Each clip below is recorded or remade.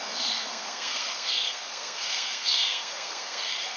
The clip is remade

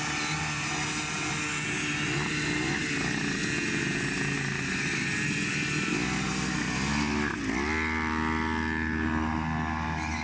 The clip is recorded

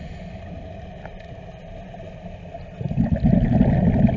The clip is recorded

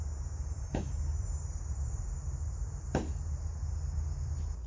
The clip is recorded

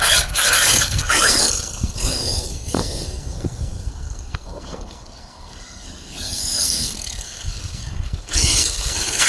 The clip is remade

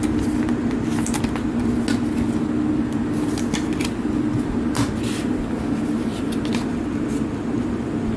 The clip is recorded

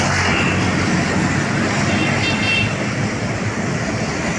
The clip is recorded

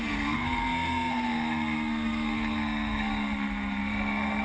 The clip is remade